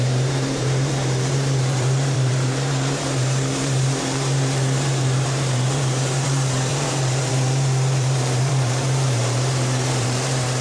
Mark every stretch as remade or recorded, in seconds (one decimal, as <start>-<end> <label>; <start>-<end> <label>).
0.0-10.6 remade